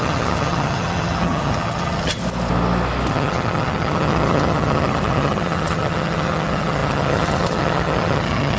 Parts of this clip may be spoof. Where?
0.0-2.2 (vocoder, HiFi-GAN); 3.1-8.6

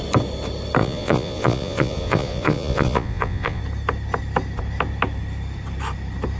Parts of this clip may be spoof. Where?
0.8-3.6 (vocoder, Vocos)